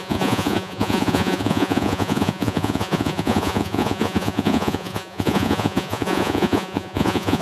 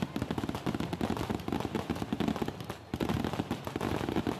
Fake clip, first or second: first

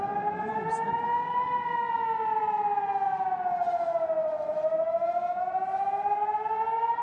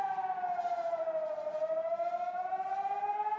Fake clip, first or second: second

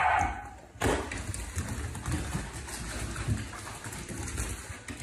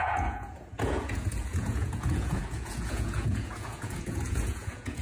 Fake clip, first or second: second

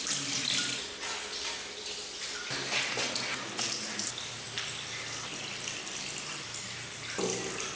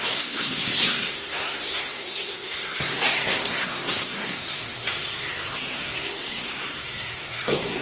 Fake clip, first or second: second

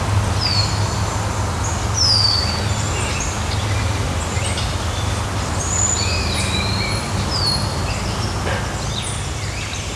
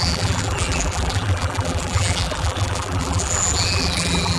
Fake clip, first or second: second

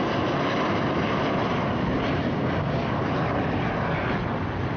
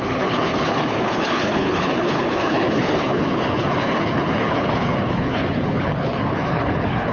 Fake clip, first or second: second